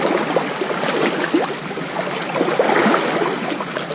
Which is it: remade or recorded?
recorded